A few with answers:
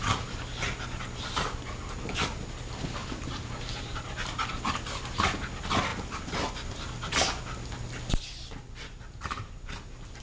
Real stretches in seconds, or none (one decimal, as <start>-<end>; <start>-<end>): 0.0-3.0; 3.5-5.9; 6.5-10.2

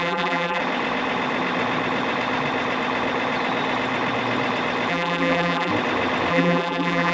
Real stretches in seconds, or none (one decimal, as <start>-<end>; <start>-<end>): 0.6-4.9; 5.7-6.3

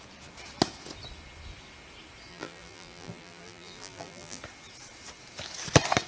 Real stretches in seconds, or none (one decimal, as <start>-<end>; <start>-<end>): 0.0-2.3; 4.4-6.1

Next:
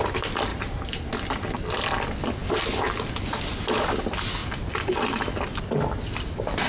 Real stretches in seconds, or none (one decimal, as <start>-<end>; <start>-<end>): 0.0-0.5; 1.1-6.7

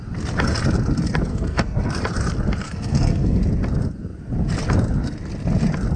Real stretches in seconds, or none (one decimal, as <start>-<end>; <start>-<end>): 0.0-1.3; 2.0-2.6; 3.4-6.0

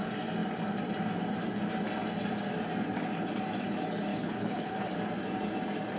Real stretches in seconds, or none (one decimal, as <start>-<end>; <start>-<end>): 0.0-4.1; 4.9-6.0